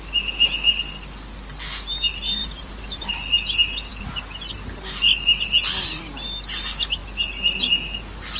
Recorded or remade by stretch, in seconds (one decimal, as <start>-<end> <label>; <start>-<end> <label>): 0.0-2.4 recorded; 2.4-3.1 remade; 3.1-8.4 recorded